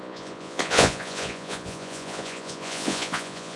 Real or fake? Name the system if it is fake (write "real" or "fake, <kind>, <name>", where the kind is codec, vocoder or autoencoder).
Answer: fake, vocoder, Vocos